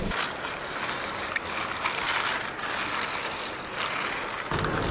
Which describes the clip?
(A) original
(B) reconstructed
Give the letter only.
A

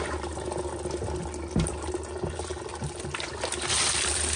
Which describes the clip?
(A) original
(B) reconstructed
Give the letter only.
A